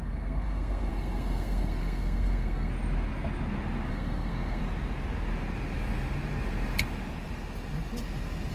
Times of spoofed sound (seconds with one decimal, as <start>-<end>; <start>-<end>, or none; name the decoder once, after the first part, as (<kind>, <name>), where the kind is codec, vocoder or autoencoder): 0.0-2.7 (codec, SNAC); 3.9-4.6